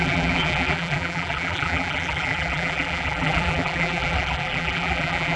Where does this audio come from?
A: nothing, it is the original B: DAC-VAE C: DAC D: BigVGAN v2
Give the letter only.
D